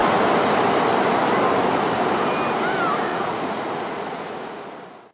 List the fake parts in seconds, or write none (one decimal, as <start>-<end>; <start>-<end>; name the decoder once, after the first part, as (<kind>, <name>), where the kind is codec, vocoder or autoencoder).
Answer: 3.1-4.6 (vocoder, Vocos)